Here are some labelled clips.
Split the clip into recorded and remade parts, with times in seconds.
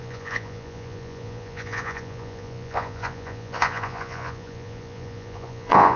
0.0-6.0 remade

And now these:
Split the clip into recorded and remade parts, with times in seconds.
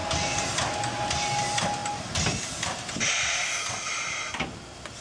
0.0-5.0 recorded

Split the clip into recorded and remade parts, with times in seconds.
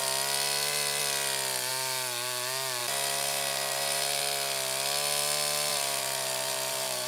0.0-2.8 recorded; 2.8-4.2 remade; 4.2-5.7 recorded; 5.7-7.1 remade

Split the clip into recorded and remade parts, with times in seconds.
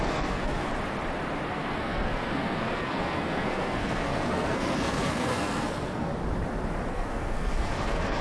0.0-0.7 remade; 0.7-1.5 recorded; 1.5-6.1 remade; 6.1-6.9 recorded; 6.9-8.2 remade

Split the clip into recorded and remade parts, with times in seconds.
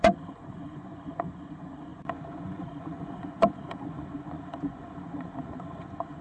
0.0-6.2 remade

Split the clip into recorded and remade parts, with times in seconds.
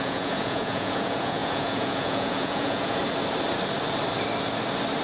0.0-3.0 remade; 3.0-5.0 recorded